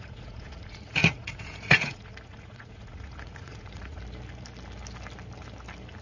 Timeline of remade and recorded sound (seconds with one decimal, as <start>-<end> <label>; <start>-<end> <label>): 0.0-4.0 remade; 4.0-6.0 recorded